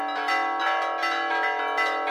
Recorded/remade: recorded